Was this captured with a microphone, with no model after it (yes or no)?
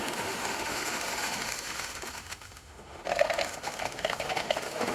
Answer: no